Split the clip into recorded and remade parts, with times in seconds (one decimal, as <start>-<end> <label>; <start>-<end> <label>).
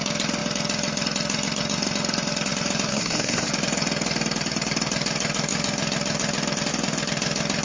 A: 0.0-2.9 recorded; 2.9-3.5 remade; 3.5-7.6 recorded